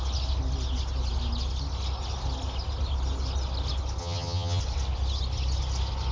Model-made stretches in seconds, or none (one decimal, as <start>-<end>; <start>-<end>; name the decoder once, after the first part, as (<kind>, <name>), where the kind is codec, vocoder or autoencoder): 4.0-4.6 (vocoder, HiFi-GAN)